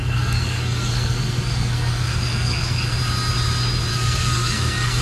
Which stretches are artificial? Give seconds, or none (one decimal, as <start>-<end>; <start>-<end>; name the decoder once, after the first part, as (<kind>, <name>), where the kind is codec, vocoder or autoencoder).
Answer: 0.0-3.0 (codec, SNAC); 3.9-5.0